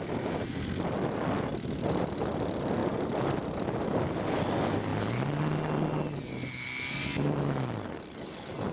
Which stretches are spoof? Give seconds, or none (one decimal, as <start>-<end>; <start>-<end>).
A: none